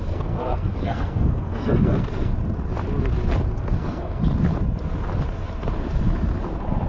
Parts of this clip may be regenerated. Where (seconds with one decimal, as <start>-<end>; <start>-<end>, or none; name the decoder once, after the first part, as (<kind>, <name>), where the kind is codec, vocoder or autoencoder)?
0.0-2.3 (codec, SNAC); 3.5-4.2

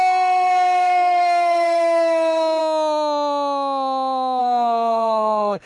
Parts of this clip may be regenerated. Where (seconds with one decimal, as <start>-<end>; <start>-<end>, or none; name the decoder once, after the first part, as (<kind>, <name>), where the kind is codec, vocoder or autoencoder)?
0.0-2.6 (codec, SNAC); 4.4-5.7